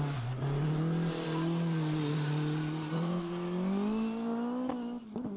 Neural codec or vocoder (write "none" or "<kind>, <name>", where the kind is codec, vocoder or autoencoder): none